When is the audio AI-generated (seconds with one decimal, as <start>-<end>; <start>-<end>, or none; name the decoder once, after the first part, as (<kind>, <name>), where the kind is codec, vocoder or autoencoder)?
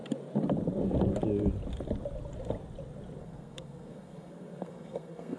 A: 3.2-5.4 (codec, SNAC)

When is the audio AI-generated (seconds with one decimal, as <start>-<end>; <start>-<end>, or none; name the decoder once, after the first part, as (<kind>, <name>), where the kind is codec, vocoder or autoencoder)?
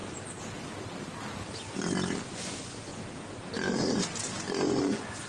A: 2.3-2.9 (vocoder, Vocos); 4.8-5.3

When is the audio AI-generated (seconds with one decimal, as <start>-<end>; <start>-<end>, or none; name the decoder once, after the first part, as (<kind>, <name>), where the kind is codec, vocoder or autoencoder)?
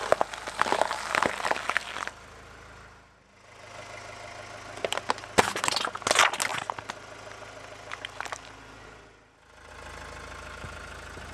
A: none